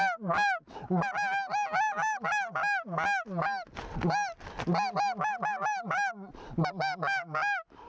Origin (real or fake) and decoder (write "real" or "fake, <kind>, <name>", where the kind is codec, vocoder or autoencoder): real